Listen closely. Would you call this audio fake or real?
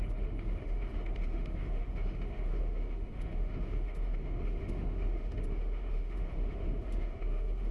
fake